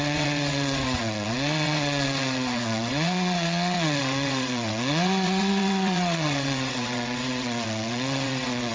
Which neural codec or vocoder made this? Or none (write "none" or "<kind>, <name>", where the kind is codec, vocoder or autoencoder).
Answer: vocoder, WaveNeXt